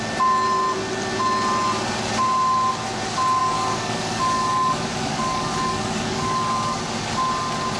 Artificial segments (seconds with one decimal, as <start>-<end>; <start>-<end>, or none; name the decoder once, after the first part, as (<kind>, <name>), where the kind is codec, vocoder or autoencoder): 3.4-6.8 (codec, DAC)

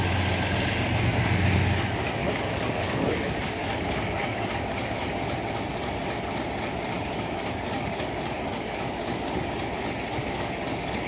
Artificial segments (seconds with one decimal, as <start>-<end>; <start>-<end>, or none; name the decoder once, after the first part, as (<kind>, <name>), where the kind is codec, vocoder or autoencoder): 2.2-5.0 (codec, DAC); 6.9-9.5; 10.2-11.1